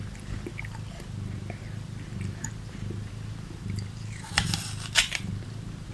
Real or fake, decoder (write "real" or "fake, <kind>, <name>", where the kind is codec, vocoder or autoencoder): fake, vocoder, BigVGAN v2